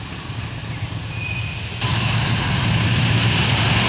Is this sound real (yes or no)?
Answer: yes